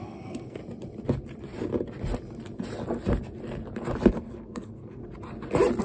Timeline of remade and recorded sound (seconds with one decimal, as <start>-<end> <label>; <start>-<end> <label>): 0.0-0.6 remade; 0.6-4.1 recorded; 4.1-5.0 remade; 5.0-5.8 recorded